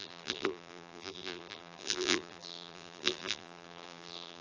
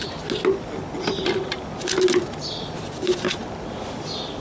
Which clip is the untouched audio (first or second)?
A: second